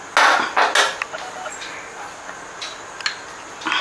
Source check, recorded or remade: recorded